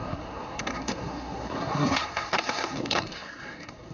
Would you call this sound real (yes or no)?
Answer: no